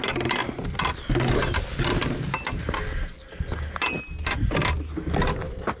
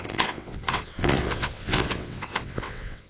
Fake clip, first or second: second